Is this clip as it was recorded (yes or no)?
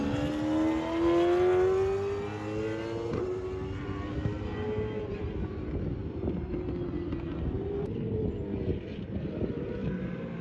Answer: yes